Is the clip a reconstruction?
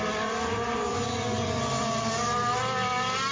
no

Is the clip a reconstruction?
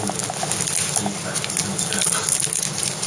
no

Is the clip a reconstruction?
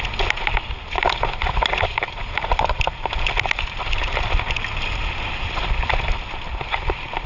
no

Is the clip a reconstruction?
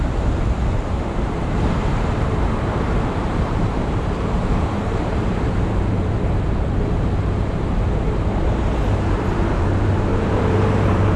yes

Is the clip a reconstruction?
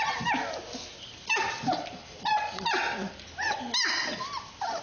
yes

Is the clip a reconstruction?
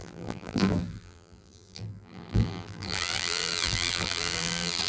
yes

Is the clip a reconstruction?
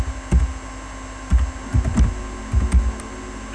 no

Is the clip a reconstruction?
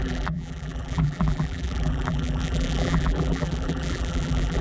yes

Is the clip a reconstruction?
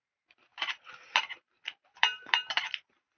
yes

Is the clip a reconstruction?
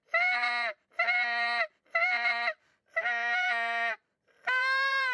yes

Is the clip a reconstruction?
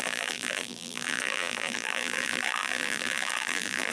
yes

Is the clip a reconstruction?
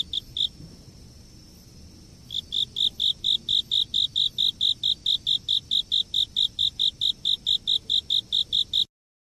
no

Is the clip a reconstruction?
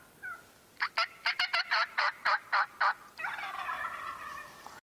no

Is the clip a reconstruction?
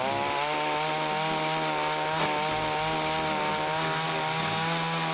no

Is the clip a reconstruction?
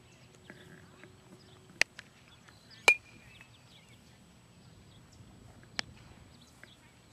no